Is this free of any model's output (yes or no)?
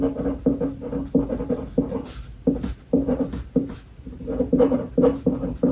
yes